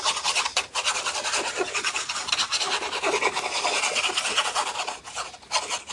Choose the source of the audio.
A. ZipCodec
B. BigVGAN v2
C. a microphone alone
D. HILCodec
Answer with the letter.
C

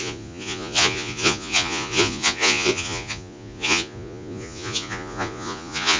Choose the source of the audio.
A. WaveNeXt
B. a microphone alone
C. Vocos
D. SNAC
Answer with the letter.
C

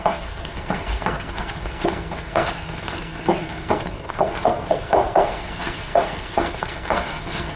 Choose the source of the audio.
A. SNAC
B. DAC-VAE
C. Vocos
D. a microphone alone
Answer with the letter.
A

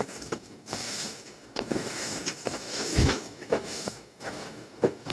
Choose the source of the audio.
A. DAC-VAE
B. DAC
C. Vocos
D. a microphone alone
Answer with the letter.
B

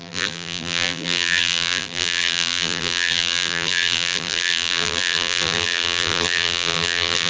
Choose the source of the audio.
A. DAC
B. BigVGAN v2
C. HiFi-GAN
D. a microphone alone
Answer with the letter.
B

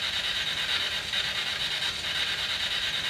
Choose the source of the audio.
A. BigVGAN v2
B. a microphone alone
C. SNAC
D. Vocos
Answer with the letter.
B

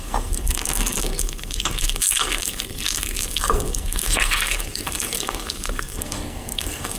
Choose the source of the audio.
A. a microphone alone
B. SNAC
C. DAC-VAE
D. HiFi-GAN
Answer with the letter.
B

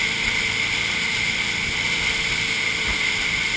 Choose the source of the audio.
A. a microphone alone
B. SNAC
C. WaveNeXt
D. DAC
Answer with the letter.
A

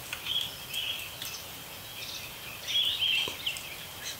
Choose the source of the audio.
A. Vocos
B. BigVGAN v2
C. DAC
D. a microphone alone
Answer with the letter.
D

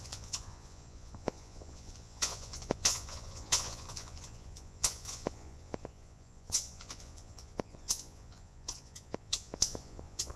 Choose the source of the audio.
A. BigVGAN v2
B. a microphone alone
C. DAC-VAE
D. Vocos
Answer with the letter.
D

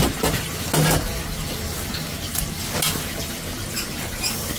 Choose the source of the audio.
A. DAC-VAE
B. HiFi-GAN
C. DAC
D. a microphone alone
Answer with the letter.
D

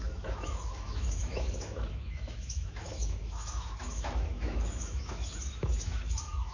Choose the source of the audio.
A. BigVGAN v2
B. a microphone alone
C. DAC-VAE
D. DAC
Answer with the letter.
C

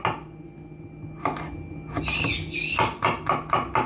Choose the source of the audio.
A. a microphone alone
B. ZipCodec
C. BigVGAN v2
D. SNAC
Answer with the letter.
A